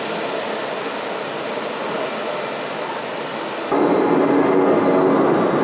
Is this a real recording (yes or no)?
yes